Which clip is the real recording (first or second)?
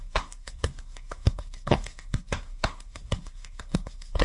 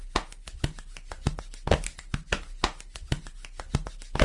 second